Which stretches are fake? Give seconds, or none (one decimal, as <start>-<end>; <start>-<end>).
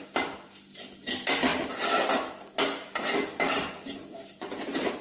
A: none